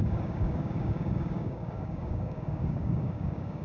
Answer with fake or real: fake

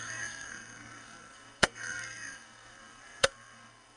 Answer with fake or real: fake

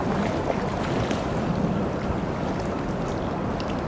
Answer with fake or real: real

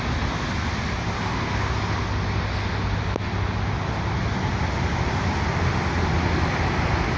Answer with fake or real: real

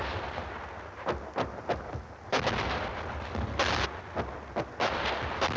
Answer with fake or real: real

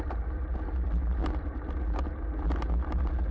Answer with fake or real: real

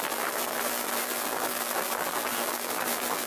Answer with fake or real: fake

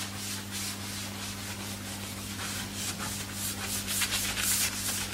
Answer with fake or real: real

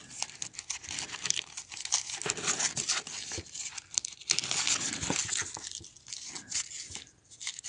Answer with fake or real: real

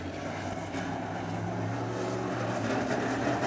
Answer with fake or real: real